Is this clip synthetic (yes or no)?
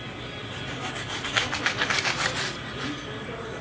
no